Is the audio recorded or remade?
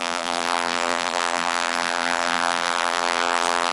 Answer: remade